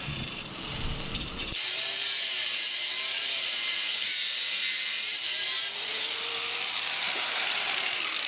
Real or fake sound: fake